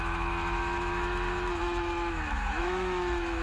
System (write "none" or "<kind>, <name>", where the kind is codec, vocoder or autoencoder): autoencoder, DAC-VAE